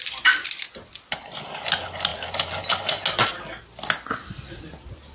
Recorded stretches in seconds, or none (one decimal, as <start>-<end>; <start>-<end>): 0.0-5.1